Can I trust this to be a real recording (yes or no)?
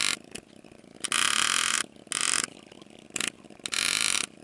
yes